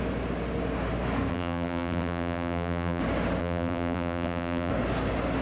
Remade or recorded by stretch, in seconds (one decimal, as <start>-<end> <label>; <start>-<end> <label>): 0.0-1.3 recorded; 1.3-3.0 remade; 3.0-3.4 recorded; 3.4-4.7 remade; 4.7-5.4 recorded